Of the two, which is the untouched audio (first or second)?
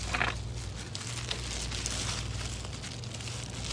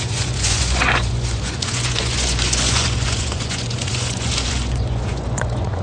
first